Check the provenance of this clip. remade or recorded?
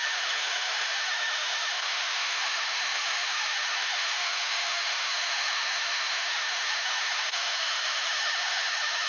remade